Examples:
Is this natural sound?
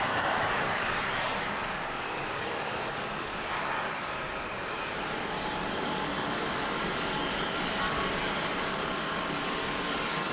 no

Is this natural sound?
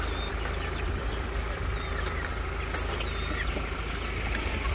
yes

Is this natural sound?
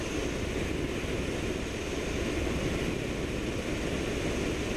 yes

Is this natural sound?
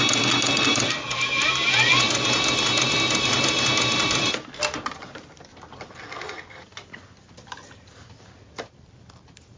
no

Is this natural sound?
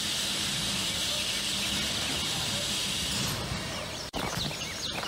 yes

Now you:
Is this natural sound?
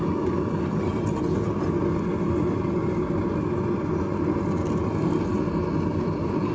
yes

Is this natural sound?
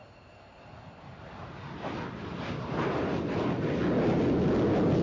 yes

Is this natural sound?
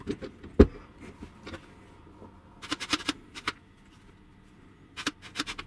yes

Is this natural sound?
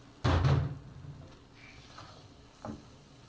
yes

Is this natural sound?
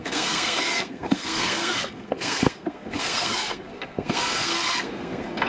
no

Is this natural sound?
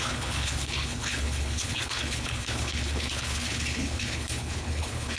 no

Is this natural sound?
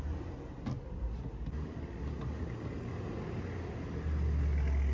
yes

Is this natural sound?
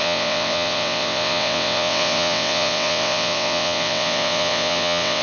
no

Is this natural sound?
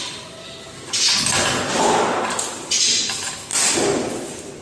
yes